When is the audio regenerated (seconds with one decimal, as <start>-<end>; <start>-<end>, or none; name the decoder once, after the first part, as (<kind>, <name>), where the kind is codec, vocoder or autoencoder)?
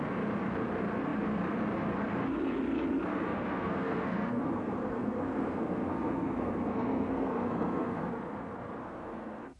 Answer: 3.1-8.1 (codec, SNAC); 8.8-9.6